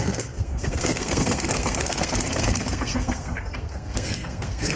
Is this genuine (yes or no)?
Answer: no